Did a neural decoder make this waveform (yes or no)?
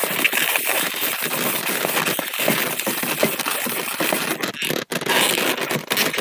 no